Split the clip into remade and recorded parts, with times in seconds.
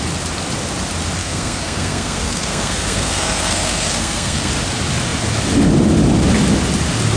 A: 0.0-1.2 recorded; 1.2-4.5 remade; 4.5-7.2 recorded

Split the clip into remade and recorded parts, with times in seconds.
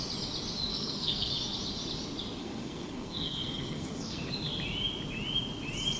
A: 0.0-0.7 recorded; 0.7-1.3 remade; 1.3-2.4 recorded; 2.4-4.3 remade; 4.3-6.0 recorded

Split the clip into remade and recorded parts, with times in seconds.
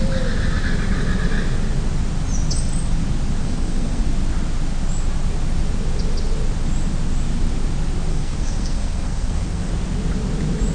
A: 0.0-3.4 recorded; 3.4-4.0 remade; 4.0-8.1 recorded; 8.1-9.7 remade; 9.7-10.7 recorded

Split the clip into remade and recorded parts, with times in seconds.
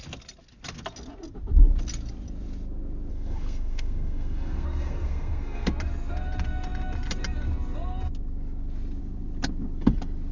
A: 0.0-3.1 recorded; 3.1-5.7 remade; 5.7-10.3 recorded